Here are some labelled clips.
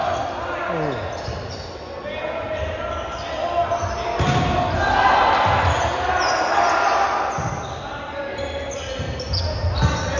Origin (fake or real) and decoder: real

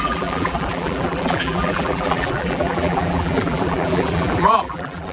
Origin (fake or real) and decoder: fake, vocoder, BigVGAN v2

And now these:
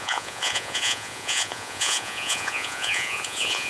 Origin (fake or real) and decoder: fake, vocoder, Vocos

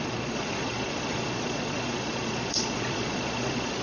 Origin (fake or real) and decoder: fake, vocoder, Vocos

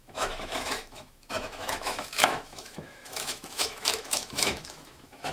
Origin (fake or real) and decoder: fake, autoencoder, DAC-VAE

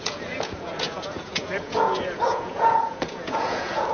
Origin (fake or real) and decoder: fake, vocoder, Vocos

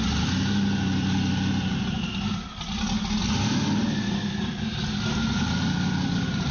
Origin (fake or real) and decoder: real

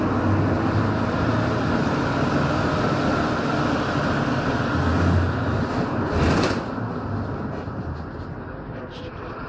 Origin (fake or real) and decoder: real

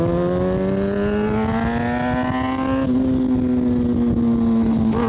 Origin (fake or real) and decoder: real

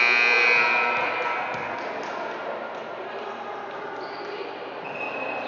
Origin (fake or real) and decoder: real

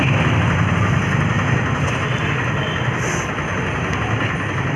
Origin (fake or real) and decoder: real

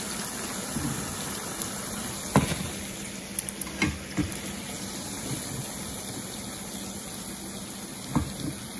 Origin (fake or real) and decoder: real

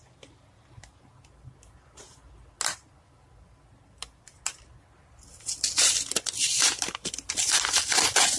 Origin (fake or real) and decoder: real